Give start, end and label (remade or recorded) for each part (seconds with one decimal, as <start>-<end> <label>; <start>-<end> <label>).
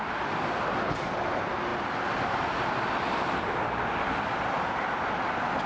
0.0-5.7 recorded